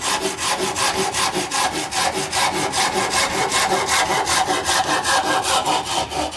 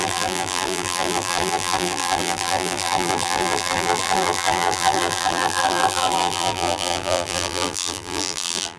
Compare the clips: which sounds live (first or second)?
first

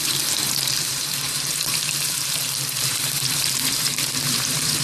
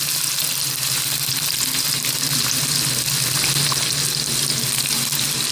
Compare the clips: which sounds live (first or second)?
second